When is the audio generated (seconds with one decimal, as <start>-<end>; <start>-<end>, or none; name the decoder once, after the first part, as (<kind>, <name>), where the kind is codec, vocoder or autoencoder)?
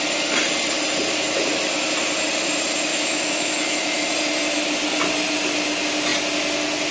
2.9-4.1 (autoencoder, DAC-VAE)